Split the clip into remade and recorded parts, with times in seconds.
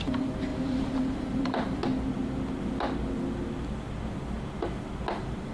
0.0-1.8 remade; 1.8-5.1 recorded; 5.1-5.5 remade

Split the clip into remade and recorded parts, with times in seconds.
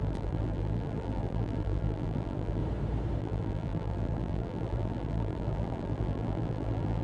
0.0-2.6 remade; 2.6-3.2 recorded; 3.2-7.0 remade